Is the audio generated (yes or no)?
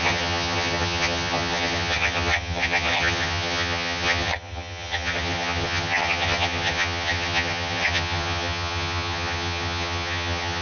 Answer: yes